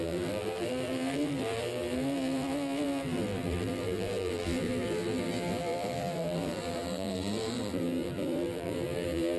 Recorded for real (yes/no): no